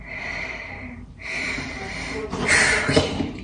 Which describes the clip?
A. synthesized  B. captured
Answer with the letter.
A